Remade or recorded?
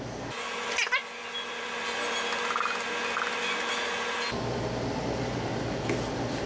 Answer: recorded